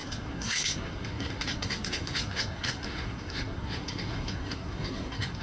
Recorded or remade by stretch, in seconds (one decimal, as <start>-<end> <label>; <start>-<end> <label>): 0.0-5.4 remade